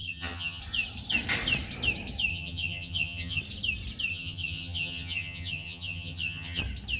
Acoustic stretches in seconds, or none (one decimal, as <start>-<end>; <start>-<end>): 0.6-2.3; 3.4-4.1; 6.6-7.0